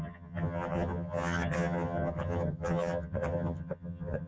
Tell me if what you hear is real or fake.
fake